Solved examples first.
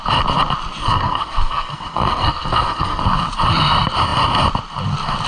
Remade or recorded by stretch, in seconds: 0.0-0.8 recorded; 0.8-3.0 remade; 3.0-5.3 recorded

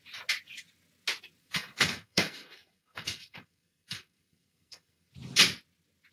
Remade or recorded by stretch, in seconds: 0.0-1.4 recorded; 1.4-5.1 remade; 5.1-6.1 recorded

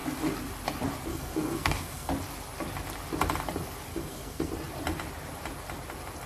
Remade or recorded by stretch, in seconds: 0.0-1.1 recorded; 1.1-2.1 remade; 2.1-3.9 recorded; 3.9-4.5 remade; 4.5-6.3 recorded